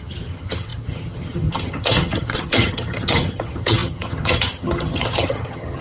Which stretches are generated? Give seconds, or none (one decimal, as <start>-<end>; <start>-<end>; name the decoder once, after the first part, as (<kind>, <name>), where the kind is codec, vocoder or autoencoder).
0.0-5.8 (vocoder, HiFi-GAN)